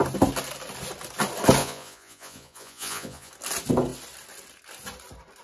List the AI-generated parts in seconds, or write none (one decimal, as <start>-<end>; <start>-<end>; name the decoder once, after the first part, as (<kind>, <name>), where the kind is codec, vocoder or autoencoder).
1.6-3.3 (vocoder, Vocos)